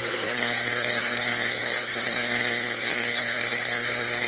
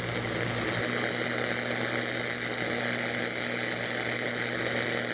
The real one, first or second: second